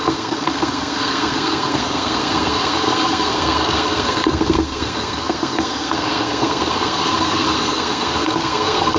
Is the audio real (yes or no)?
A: no